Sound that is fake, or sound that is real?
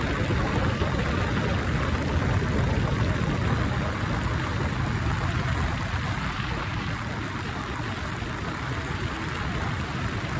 real